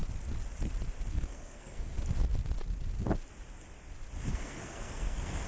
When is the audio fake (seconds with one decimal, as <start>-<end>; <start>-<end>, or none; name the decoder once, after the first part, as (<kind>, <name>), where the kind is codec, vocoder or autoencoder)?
1.1-2.0 (codec, SNAC); 4.3-5.5